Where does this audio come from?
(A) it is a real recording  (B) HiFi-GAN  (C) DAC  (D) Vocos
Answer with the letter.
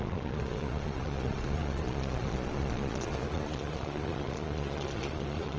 D